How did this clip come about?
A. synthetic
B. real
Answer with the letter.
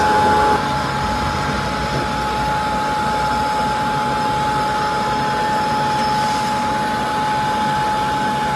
B